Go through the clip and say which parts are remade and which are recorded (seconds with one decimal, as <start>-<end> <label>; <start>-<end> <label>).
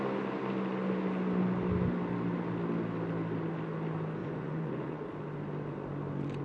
0.0-4.2 recorded; 4.2-5.0 remade; 5.0-6.4 recorded